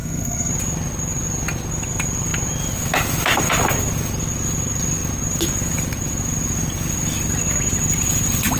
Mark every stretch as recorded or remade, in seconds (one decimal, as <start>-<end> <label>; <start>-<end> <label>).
0.0-0.5 remade; 0.5-8.6 recorded